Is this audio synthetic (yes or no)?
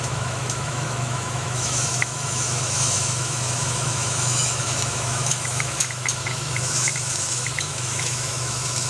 yes